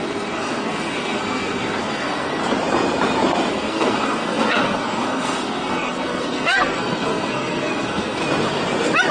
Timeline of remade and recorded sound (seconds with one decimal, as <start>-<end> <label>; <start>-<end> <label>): 0.0-2.4 remade; 2.4-3.5 recorded; 3.5-8.2 remade; 8.2-9.1 recorded